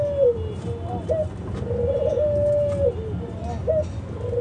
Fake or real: real